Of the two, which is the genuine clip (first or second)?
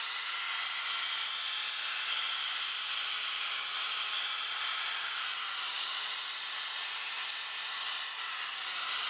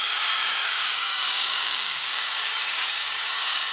first